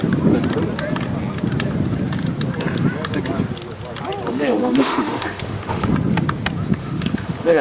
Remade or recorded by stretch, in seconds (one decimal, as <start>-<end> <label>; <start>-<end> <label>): 0.0-4.3 recorded; 4.3-5.9 remade; 5.9-6.8 recorded; 6.8-7.6 remade